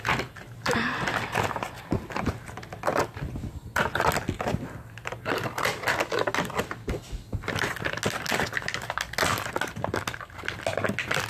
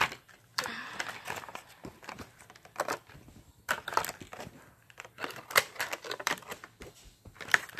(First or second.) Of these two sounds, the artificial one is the second